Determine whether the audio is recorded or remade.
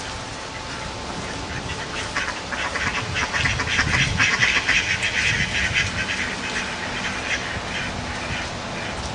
recorded